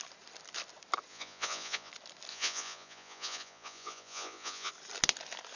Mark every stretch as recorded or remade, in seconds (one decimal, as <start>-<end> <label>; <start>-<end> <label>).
0.0-1.1 recorded; 1.1-1.9 remade; 1.9-2.3 recorded; 2.3-4.7 remade; 4.7-5.6 recorded